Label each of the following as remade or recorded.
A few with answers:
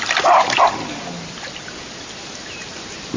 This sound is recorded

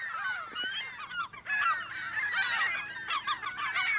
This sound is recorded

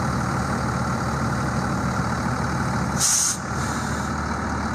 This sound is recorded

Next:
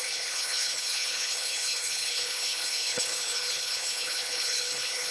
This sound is remade